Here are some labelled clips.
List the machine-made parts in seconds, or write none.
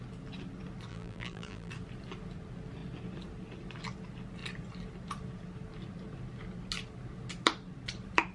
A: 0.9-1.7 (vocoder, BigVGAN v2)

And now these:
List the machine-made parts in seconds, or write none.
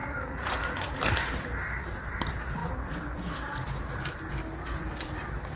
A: 0.0-1.0 (vocoder, Vocos)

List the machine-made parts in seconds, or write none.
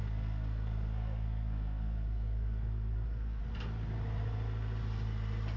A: 0.0-3.4 (codec, SNAC)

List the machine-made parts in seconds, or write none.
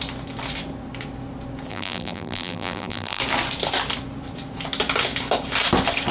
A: 1.7-3.2 (vocoder, BigVGAN v2)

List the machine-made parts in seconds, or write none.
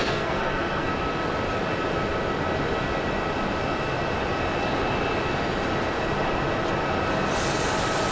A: 0.0-0.9 (codec, SNAC)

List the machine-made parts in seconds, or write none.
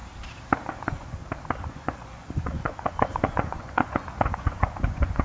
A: 0.7-1.2 (vocoder, Vocos); 1.7-5.2